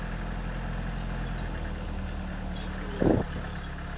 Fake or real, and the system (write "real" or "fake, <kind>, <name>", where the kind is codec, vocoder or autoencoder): real